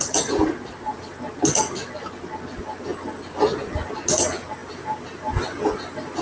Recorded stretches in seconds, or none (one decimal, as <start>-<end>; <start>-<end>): 0.0-6.2